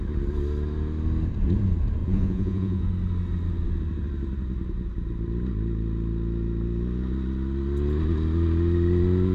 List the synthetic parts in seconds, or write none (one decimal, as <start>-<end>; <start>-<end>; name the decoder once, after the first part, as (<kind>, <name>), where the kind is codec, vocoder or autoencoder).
2.0-2.9 (vocoder, Vocos)